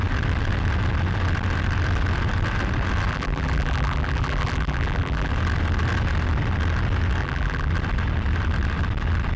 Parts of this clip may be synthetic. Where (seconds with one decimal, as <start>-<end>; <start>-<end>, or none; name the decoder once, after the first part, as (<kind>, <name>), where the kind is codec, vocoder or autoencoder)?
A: 3.1-5.3 (vocoder, BigVGAN v2); 7.2-7.7